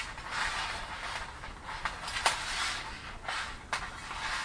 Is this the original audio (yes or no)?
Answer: yes